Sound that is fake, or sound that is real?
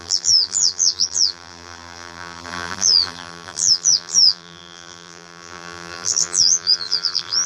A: fake